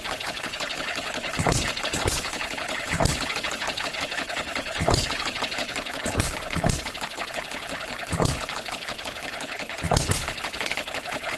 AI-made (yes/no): yes